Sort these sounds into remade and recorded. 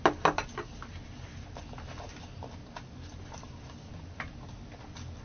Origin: recorded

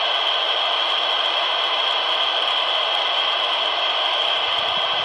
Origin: recorded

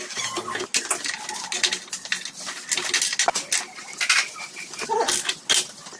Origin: recorded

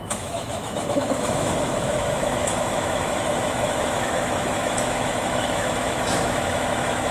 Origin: remade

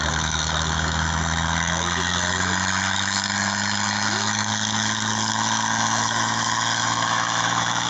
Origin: remade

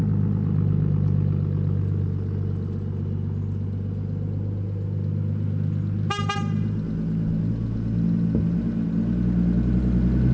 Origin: recorded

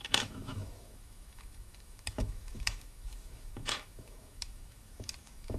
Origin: remade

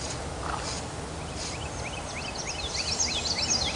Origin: recorded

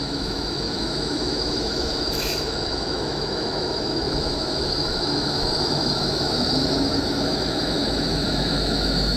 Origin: remade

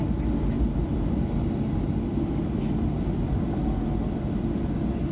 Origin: recorded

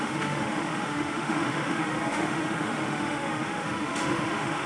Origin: remade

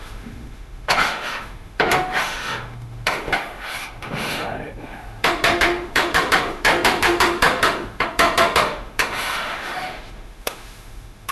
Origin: remade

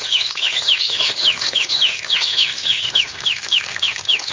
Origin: remade